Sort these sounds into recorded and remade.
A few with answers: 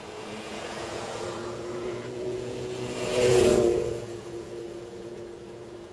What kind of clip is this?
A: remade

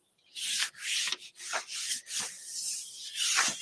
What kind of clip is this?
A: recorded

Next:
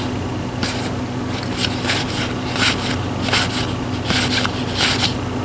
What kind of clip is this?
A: recorded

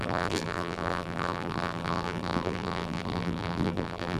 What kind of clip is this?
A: remade